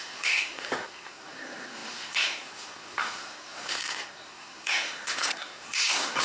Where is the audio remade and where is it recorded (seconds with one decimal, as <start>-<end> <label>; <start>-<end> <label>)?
0.0-6.2 remade